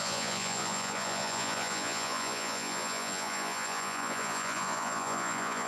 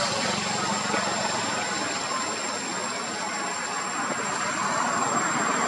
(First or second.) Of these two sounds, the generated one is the first